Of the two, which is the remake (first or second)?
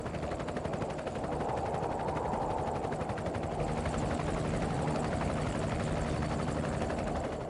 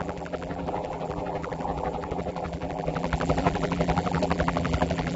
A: second